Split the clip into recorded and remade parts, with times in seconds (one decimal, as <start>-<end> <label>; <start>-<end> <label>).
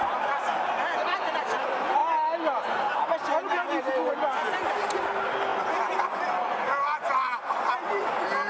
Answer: 0.0-8.5 recorded